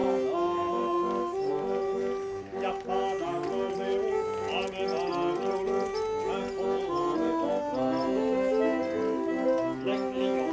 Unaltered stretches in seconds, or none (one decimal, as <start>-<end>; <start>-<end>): 0.0-10.5